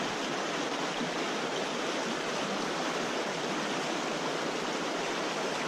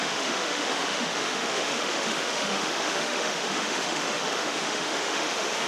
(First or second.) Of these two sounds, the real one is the first